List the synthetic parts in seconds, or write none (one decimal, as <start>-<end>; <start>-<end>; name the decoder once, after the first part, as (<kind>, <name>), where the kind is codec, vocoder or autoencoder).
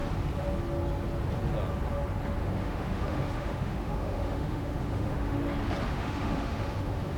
2.4-5.4 (autoencoder, DAC-VAE); 5.9-7.2